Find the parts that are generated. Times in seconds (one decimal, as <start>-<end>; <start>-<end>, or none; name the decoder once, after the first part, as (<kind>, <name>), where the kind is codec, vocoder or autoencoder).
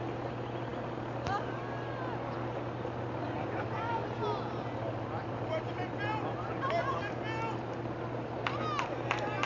none